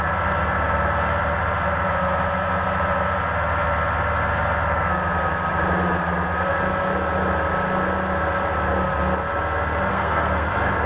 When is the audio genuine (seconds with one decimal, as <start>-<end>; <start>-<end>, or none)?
0.0-9.9; 10.5-10.9